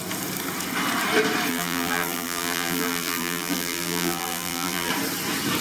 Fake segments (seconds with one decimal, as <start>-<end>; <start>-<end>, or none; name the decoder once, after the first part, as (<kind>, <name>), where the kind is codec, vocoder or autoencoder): 1.5-4.9 (vocoder, BigVGAN v2)

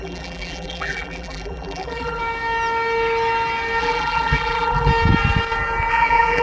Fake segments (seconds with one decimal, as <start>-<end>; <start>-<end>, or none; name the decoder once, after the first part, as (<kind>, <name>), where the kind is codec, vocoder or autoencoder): 0.0-2.2 (vocoder, BigVGAN v2); 3.8-4.9; 5.9-6.4

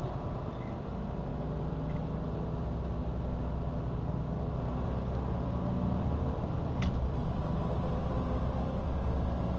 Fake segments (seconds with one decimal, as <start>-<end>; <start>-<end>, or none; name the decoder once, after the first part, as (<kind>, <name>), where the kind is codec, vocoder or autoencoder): 0.0-1.3 (vocoder, BigVGAN v2); 6.0-9.6

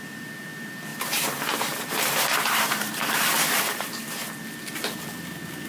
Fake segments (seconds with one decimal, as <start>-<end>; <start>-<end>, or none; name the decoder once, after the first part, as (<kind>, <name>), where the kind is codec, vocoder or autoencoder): 0.9-4.3 (vocoder, BigVGAN v2)